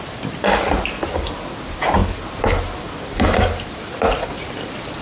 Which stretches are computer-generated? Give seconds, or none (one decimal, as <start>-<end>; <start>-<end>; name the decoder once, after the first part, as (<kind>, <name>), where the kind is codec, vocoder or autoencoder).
none